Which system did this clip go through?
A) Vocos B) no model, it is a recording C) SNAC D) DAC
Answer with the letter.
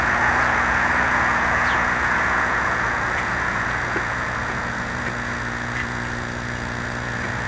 A